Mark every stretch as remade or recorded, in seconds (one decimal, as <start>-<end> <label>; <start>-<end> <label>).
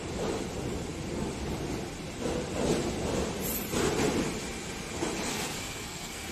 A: 0.0-5.3 recorded; 5.3-6.3 remade